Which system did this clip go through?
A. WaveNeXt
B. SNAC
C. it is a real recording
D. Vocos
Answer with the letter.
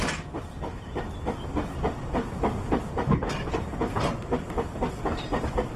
C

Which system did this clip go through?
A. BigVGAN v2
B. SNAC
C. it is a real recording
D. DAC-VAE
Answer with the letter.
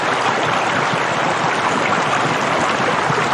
C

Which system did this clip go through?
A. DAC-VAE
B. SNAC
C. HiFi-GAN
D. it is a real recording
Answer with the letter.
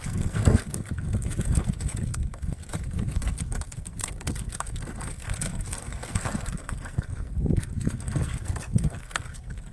B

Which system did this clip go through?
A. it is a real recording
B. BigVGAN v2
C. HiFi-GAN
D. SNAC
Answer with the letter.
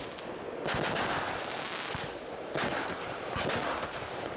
A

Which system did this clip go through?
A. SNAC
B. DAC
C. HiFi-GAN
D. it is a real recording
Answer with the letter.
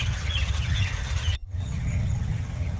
C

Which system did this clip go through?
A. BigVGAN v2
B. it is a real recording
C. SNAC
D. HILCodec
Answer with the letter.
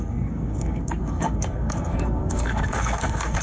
C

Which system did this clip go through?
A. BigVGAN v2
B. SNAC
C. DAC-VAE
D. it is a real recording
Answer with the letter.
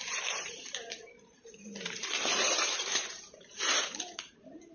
A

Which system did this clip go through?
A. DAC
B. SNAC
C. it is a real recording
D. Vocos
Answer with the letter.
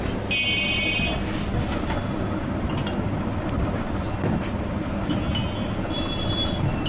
C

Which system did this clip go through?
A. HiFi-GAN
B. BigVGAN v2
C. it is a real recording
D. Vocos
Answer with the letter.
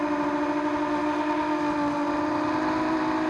C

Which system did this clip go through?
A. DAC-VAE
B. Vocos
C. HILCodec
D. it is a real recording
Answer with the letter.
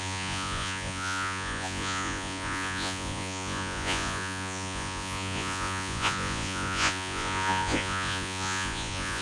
B